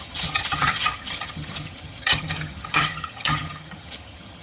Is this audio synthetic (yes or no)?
yes